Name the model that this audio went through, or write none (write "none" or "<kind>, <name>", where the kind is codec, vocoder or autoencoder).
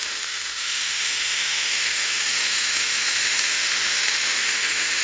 autoencoder, DAC-VAE